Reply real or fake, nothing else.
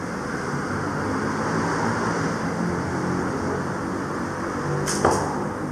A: real